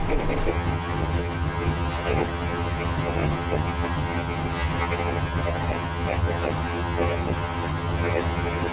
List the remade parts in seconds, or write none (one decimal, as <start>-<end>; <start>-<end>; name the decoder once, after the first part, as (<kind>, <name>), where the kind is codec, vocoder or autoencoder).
0.5-8.7 (vocoder, HiFi-GAN)